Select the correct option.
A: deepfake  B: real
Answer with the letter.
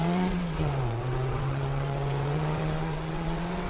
A